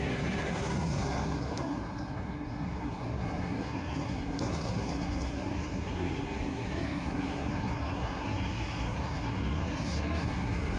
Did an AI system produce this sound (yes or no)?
yes